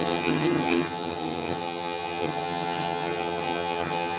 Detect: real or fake fake